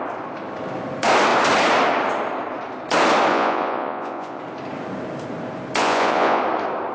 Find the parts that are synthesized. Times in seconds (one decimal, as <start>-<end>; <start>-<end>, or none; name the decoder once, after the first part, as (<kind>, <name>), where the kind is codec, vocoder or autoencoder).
3.3-4.4 (vocoder, Vocos); 5.8-6.4